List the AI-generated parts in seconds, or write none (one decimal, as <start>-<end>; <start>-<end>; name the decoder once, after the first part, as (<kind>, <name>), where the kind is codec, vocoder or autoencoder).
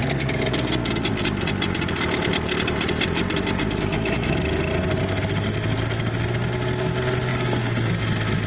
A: 7.3-8.0 (codec, DAC)